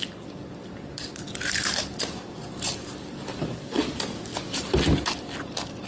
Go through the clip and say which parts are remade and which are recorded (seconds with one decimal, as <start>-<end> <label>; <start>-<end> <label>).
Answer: 0.0-4.3 remade; 4.3-5.2 recorded; 5.2-5.9 remade

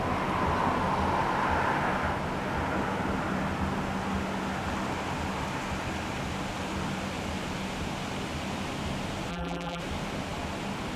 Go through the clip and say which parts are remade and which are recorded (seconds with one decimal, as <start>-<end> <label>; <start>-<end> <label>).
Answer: 0.0-9.3 recorded; 9.3-9.8 remade; 9.8-11.0 recorded

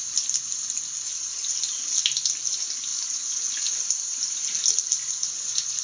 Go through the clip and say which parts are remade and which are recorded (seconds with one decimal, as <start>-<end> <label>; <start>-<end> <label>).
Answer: 0.0-5.8 recorded

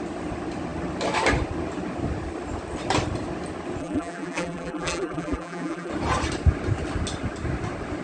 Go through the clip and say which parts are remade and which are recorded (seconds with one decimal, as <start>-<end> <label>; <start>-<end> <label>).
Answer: 0.0-3.8 recorded; 3.8-5.9 remade; 5.9-8.0 recorded

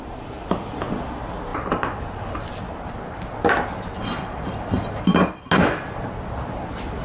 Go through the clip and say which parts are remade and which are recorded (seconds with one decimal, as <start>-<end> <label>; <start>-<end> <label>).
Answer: 0.0-7.0 recorded

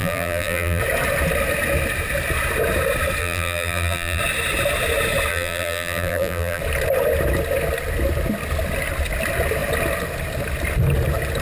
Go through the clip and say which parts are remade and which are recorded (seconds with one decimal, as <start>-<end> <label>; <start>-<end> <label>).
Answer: 0.0-0.8 remade; 0.8-3.2 recorded; 3.2-4.2 remade; 4.2-5.3 recorded; 5.3-6.6 remade; 6.6-11.4 recorded

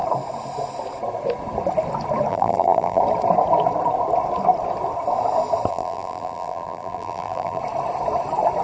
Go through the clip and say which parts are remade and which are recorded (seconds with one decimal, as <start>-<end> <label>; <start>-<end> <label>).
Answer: 0.0-2.3 recorded; 2.3-3.0 remade; 3.0-5.7 recorded; 5.7-7.6 remade; 7.6-8.6 recorded